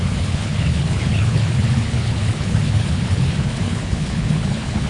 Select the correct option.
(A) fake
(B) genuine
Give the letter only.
A